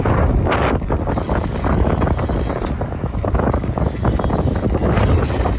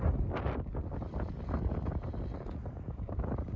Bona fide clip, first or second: first